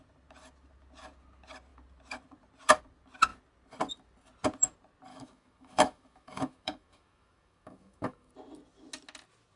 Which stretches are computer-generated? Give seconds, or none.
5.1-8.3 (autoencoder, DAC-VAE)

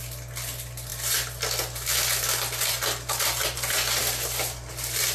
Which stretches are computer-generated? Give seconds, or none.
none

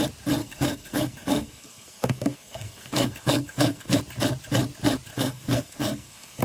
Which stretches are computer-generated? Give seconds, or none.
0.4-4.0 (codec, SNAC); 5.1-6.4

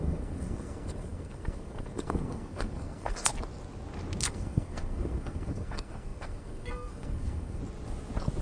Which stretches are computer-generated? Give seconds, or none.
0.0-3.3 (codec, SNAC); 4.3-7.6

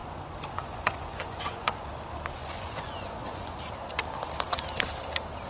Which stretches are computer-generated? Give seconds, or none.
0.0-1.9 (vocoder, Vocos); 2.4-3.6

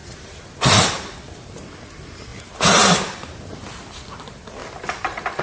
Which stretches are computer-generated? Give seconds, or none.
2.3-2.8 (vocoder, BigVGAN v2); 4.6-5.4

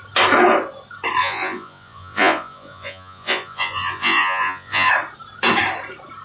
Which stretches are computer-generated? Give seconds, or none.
1.2-4.9 (vocoder, Vocos)